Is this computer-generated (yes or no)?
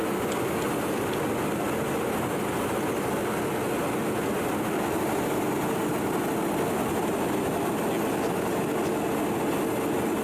no